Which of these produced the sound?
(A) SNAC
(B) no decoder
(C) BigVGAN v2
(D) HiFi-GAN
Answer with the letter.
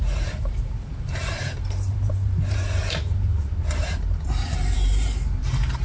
C